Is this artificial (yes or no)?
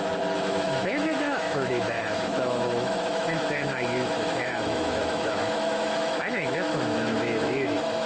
yes